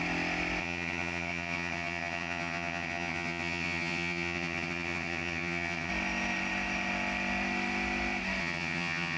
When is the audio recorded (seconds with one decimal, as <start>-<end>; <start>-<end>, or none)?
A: 0.0-0.6; 5.9-8.4